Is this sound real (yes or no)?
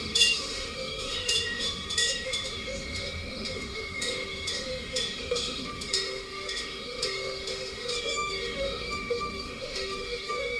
no